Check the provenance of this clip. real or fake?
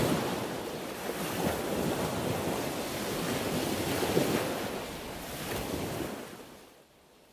real